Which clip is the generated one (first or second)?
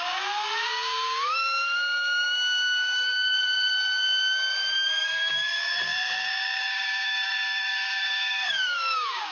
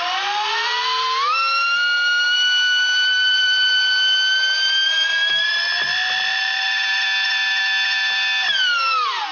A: first